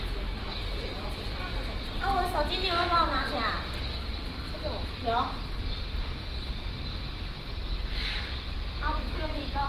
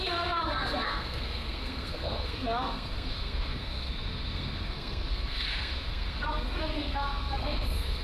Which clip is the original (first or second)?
first